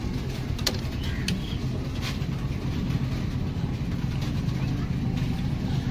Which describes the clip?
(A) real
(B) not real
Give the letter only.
A